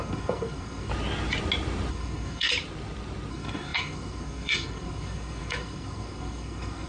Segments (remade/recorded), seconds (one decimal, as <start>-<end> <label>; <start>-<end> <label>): 0.0-0.9 remade; 0.9-1.9 recorded; 1.9-2.5 remade; 2.5-3.3 recorded; 3.3-6.9 remade

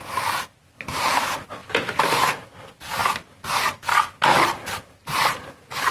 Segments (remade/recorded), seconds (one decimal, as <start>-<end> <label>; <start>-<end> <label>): 0.0-5.9 recorded

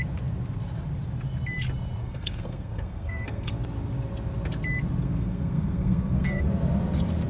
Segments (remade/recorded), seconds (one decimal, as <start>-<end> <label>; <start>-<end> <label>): 0.0-2.0 recorded; 2.0-3.5 remade; 3.5-5.0 recorded; 5.0-6.5 remade; 6.5-7.3 recorded

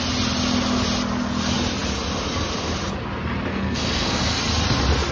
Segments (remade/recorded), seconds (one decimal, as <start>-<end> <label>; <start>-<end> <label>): 0.0-3.5 recorded; 3.5-4.4 remade; 4.4-5.1 recorded